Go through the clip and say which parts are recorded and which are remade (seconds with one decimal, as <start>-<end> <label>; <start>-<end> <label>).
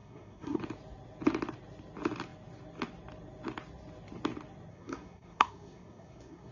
0.0-0.6 remade; 0.6-4.7 recorded; 4.7-6.5 remade